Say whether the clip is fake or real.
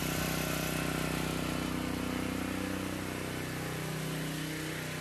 real